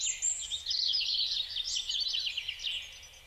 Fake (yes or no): no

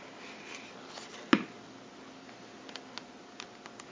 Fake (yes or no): no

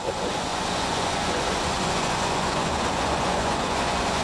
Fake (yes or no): yes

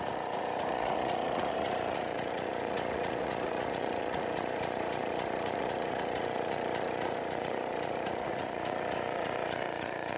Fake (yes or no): yes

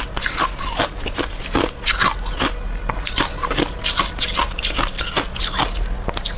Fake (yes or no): no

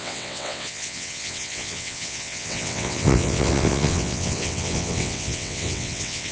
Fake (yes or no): yes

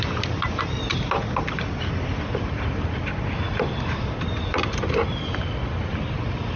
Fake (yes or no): no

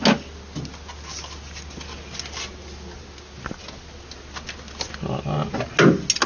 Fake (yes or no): no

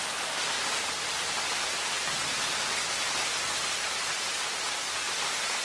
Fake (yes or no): no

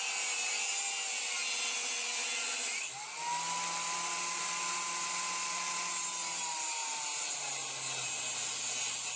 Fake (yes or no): no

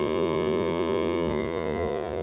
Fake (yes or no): yes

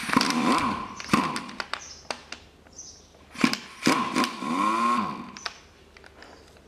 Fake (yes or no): no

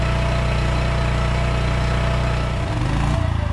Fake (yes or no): no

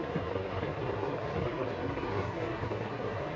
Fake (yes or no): yes